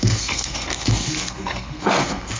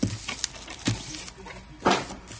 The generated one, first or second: first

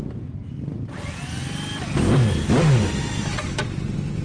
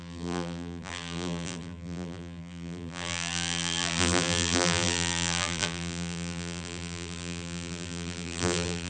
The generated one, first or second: second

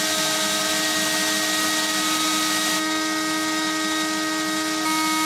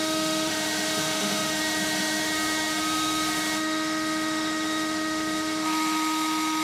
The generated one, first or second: second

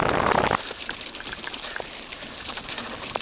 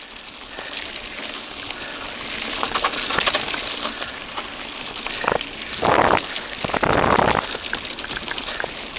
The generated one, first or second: first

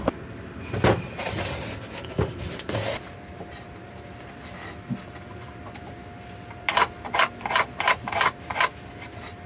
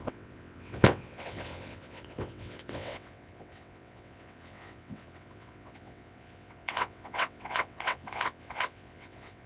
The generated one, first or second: second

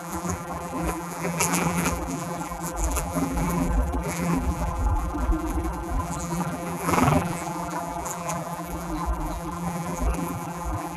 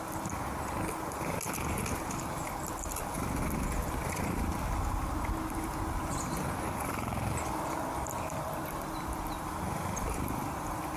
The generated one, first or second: first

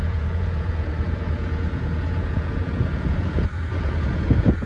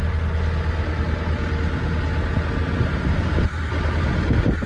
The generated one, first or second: first